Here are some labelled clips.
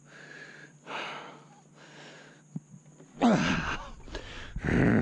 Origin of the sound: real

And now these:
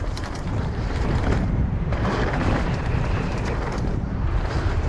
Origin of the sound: fake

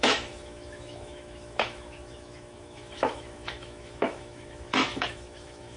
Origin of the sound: fake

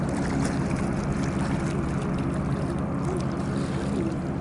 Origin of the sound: real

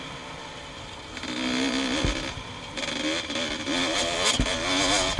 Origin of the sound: real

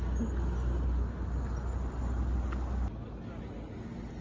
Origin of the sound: real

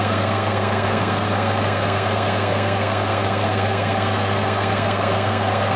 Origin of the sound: fake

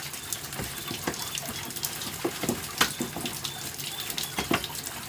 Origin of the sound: real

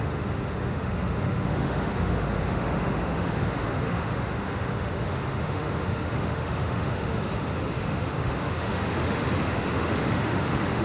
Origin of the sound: fake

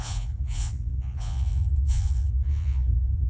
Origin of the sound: fake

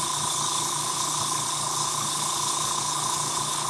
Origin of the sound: fake